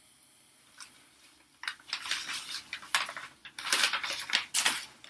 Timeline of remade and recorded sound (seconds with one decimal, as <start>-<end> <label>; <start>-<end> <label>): 0.0-5.1 recorded